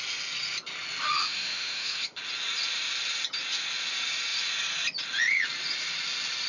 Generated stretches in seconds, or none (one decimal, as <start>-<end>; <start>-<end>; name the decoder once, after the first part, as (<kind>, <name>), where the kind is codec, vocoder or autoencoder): 1.2-2.2 (autoencoder, DAC-VAE)